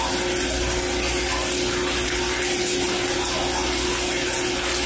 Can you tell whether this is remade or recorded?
recorded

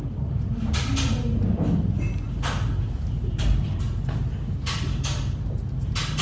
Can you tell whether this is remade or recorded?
recorded